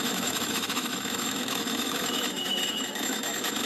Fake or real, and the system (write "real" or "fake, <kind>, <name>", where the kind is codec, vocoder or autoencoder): fake, autoencoder, DAC-VAE